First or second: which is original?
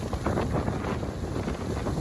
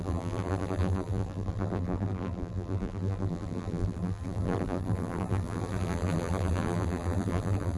first